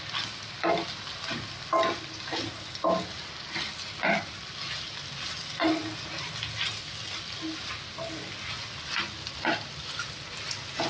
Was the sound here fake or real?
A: real